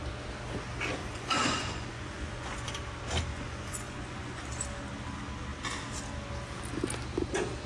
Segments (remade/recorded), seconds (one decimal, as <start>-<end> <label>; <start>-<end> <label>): 0.0-1.0 recorded; 1.0-2.7 remade; 2.7-3.3 recorded; 3.3-4.4 remade; 4.4-7.7 recorded